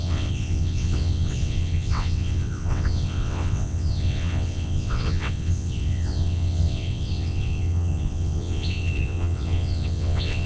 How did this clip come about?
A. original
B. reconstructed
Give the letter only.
B